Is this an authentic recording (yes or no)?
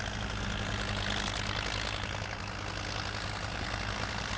yes